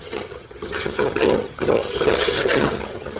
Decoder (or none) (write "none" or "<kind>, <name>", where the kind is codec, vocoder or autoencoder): vocoder, HiFi-GAN